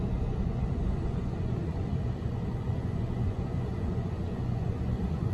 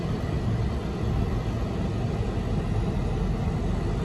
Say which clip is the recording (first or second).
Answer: second